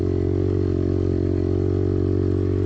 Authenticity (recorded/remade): recorded